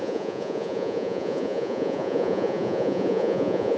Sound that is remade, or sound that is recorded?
remade